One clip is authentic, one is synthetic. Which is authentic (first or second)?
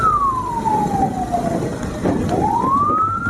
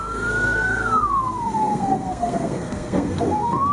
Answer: first